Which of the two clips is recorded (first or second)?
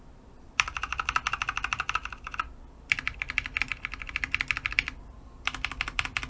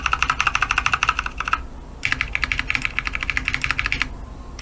second